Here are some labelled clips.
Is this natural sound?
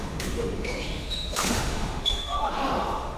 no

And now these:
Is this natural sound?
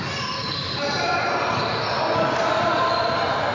no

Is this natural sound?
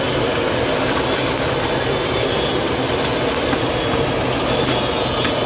yes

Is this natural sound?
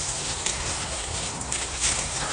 no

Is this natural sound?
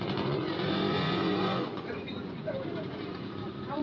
no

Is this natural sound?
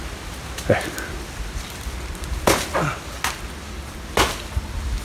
yes